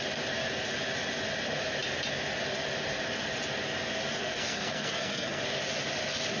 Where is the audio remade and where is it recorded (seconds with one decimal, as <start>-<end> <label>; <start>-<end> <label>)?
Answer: 0.0-4.2 recorded; 4.2-5.4 remade; 5.4-6.4 recorded